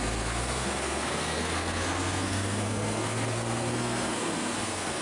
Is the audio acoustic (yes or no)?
no